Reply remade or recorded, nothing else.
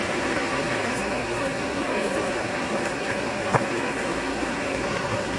remade